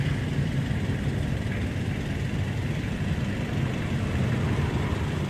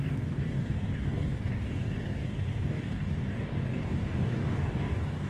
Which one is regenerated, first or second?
second